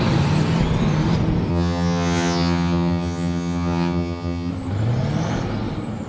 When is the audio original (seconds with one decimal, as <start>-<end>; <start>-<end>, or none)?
0.0-1.5; 4.5-6.1